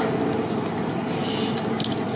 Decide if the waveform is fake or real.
real